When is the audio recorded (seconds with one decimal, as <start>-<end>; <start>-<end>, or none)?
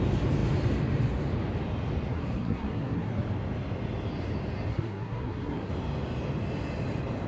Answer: 0.0-2.1; 3.2-4.7; 5.7-7.3